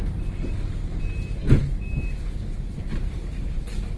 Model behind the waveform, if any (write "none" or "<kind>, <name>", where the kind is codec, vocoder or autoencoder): none